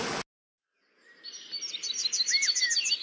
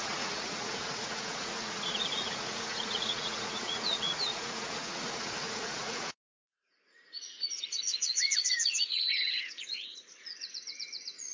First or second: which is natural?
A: first